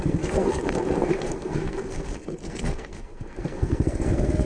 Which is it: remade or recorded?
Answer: remade